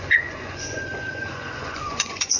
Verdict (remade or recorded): remade